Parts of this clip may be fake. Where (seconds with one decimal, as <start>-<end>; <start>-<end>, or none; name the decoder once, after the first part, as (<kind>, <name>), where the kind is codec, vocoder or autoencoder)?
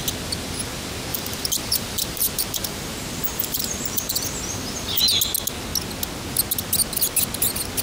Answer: 1.1-5.0 (vocoder, BigVGAN v2)